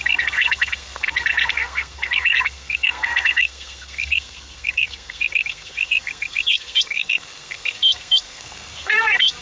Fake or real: fake